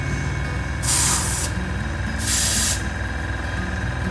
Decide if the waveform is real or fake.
real